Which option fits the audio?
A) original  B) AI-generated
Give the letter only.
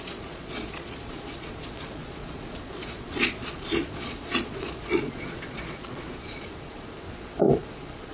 B